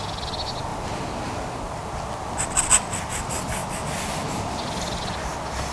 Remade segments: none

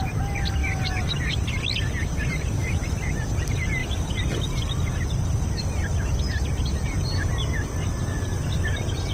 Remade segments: none

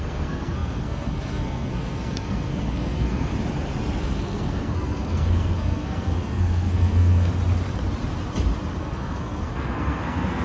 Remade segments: 0.0-3.3 (codec, SNAC); 4.0-7.3; 8.8-10.4

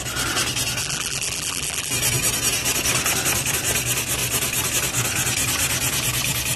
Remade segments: 0.8-1.9 (vocoder, BigVGAN v2)

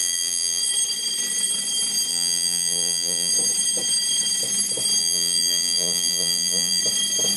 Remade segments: 0.0-0.6 (vocoder, BigVGAN v2); 2.1-3.3; 5.0-6.8

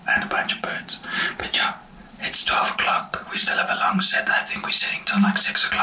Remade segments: 0.4-3.9 (vocoder, Vocos)

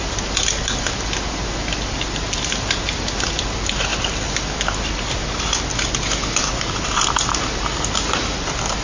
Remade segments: none

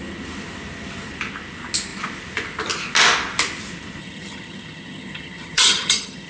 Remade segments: 4.0-6.3 (vocoder, HiFi-GAN)